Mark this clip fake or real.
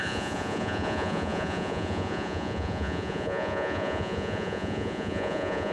fake